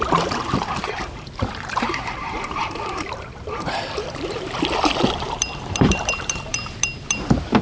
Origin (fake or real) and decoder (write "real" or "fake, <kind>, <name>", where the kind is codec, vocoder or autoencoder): fake, vocoder, BigVGAN v2